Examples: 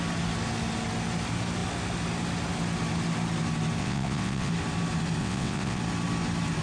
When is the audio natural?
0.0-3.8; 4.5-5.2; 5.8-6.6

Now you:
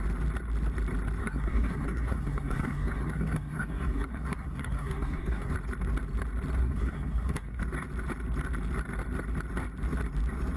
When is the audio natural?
0.0-1.2; 5.5-6.6; 7.6-10.6